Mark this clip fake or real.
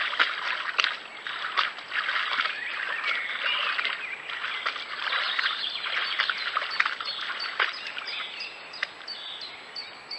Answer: real